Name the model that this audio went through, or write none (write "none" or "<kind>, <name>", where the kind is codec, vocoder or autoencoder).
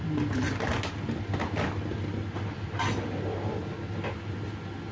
none